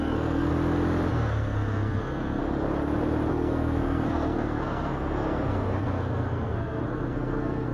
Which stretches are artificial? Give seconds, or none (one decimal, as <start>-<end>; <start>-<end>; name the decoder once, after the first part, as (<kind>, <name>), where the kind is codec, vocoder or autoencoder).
0.0-0.5 (codec, SNAC); 1.1-2.4; 3.3-7.7